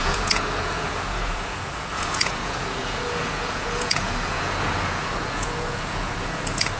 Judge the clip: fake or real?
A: fake